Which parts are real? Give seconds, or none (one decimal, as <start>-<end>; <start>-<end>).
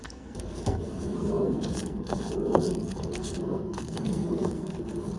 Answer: none